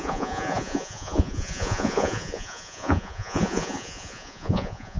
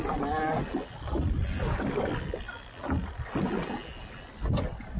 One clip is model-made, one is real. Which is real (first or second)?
second